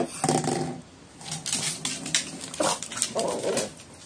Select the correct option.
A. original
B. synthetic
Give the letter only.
A